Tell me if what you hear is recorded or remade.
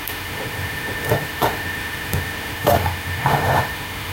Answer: remade